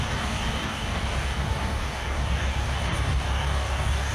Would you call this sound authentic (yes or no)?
no